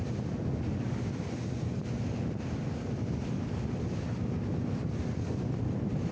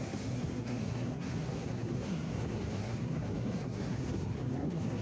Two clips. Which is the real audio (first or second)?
first